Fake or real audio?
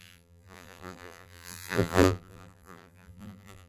fake